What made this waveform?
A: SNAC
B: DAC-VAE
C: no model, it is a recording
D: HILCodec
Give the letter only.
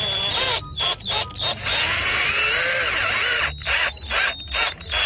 C